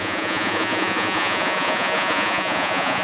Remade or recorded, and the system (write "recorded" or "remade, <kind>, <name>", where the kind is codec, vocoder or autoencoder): remade, vocoder, Vocos